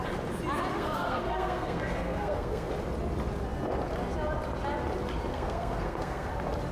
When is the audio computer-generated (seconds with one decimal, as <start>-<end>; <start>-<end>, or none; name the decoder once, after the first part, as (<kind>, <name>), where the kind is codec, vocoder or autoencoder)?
0.7-2.7 (codec, SNAC); 5.3-6.3